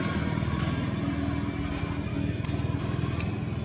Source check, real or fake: real